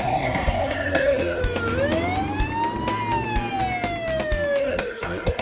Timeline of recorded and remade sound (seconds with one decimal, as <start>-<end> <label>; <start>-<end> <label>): 0.0-1.4 remade; 1.4-4.6 recorded; 4.6-5.4 remade